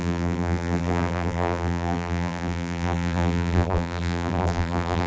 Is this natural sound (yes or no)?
no